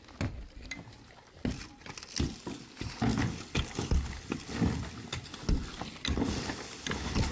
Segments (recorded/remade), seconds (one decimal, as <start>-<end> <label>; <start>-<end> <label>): 0.0-7.3 recorded